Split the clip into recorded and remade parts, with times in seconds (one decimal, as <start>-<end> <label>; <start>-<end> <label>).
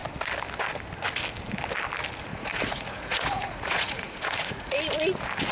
0.0-2.3 recorded; 2.3-4.7 remade; 4.7-5.5 recorded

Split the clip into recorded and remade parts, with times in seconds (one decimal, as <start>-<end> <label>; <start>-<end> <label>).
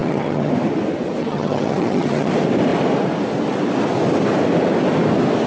0.0-0.5 remade; 0.5-1.2 recorded; 1.2-2.3 remade; 2.3-5.5 recorded